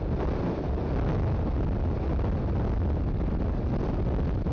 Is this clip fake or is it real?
real